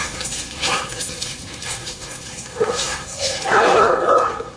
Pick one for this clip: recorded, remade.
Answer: remade